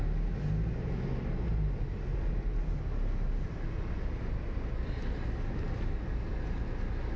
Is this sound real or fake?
real